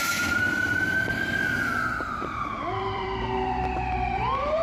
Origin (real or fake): fake